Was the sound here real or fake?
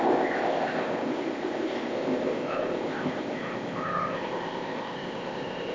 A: fake